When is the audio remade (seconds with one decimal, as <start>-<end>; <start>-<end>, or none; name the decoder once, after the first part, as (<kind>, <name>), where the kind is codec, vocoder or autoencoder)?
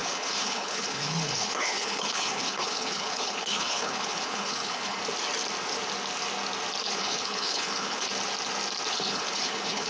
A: 0.0-5.0 (codec, HILCodec); 6.8-8.1; 8.9-9.9